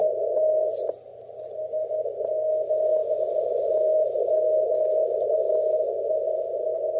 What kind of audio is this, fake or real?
real